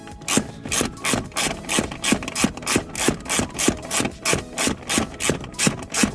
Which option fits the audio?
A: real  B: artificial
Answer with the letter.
A